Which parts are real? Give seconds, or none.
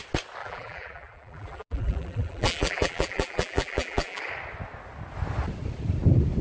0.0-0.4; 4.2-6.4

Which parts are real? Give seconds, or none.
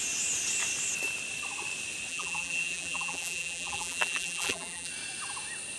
0.0-2.1; 4.9-5.8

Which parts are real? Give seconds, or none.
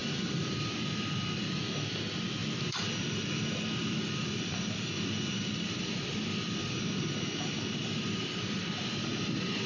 0.7-2.4; 6.8-7.8; 8.6-9.7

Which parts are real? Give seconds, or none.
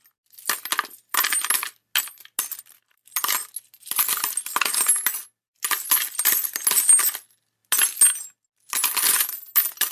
0.0-9.9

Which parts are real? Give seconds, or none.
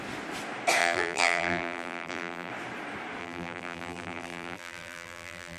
0.0-0.8; 2.5-3.2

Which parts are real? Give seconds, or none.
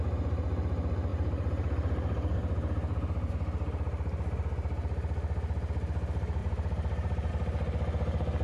0.0-1.1; 3.3-6.4; 7.3-8.4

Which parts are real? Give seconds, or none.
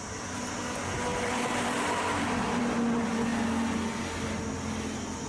0.0-1.1; 2.6-5.3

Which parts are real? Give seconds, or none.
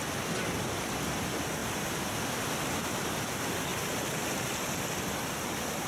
0.0-1.6; 3.2-5.9